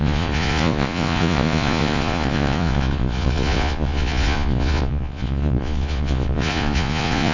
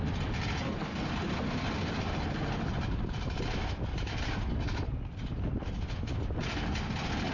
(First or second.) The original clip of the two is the second